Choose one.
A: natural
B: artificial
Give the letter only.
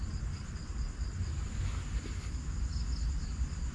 A